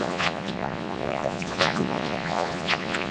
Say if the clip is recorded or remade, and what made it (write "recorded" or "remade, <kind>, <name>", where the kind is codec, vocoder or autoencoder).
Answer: remade, vocoder, Vocos